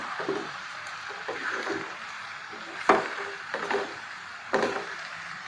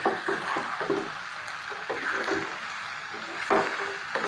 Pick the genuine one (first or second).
second